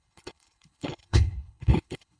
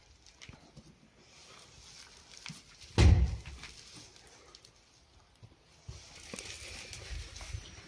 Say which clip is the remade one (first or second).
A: first